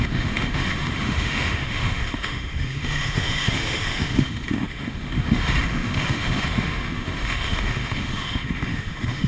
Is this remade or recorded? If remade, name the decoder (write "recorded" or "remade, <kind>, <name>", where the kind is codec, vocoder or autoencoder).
remade, autoencoder, DAC-VAE